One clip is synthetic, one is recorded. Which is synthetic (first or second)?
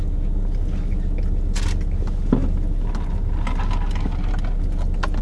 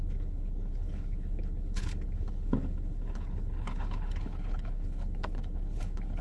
second